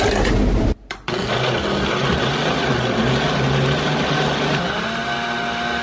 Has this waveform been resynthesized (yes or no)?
no